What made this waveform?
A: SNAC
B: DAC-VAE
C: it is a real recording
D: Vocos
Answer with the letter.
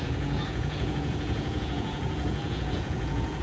D